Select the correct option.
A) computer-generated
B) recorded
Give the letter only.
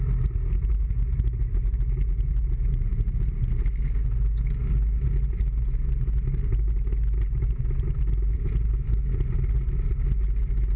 B